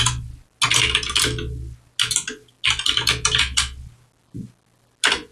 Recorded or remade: recorded